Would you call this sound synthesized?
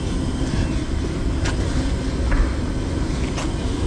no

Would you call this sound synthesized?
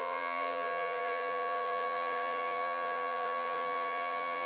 yes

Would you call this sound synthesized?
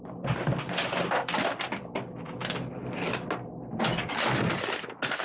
no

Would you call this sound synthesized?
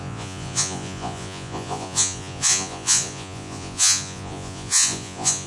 yes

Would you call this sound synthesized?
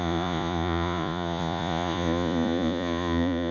yes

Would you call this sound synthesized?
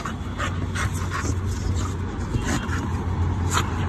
no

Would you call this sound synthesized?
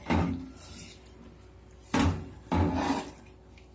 yes